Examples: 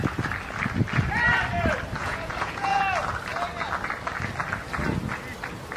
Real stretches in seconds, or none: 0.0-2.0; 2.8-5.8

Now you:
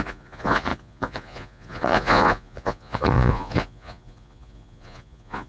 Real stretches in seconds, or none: none